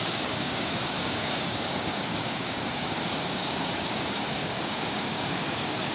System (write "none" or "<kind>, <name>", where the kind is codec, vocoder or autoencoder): codec, DAC